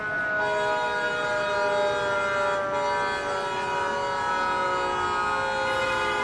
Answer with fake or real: real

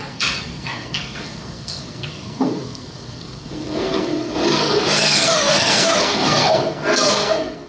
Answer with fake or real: fake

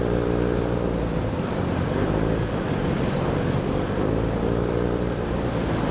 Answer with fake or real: fake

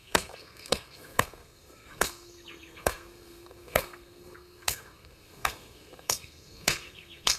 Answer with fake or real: fake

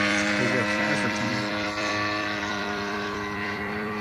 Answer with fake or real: fake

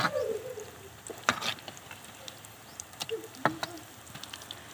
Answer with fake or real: real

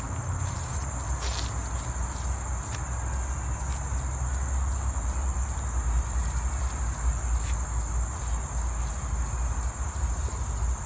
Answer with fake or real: real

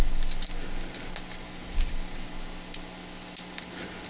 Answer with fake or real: real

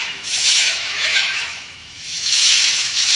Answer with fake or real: fake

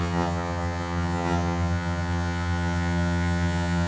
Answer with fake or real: fake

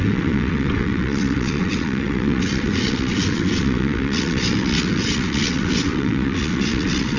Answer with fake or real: fake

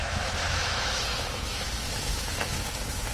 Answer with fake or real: fake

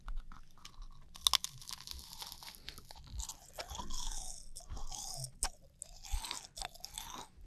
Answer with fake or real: real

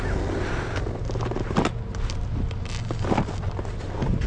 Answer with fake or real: real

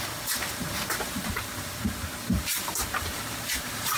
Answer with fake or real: fake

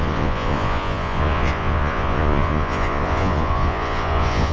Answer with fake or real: fake